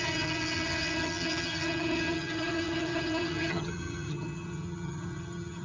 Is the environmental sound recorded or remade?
remade